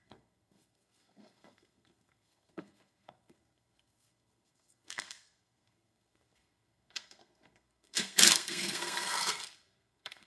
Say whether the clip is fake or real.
fake